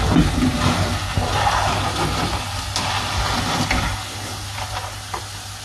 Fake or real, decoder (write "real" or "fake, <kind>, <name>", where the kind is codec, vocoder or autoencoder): real